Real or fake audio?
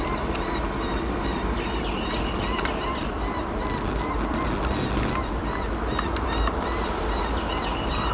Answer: real